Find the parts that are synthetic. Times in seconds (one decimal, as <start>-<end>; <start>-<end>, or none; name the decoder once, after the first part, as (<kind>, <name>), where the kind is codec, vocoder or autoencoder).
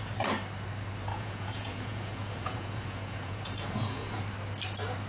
1.1-4.2 (vocoder, Vocos)